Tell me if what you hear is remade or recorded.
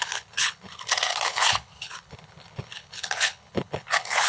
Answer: remade